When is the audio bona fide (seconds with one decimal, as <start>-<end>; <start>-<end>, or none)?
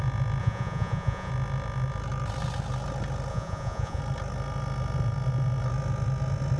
0.0-0.4; 1.3-3.3; 4.0-6.6